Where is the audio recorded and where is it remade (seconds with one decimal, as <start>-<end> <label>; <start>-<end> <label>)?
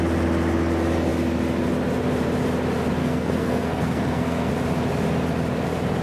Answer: 0.0-3.0 recorded; 3.0-4.5 remade; 4.5-6.0 recorded